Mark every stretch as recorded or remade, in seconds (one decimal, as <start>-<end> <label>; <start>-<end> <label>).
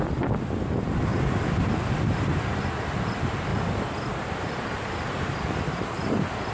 0.0-1.1 recorded; 1.1-1.7 remade; 1.7-3.5 recorded; 3.5-6.1 remade; 6.1-6.5 recorded